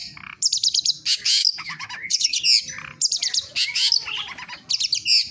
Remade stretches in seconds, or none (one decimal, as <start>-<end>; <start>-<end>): 1.4-2.4